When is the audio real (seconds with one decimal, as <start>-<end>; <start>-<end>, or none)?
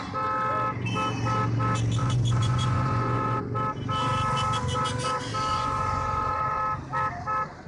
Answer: 0.0-2.0; 3.4-5.5; 6.6-7.7